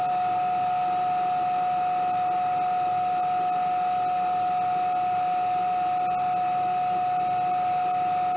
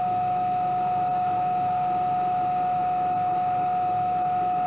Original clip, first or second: first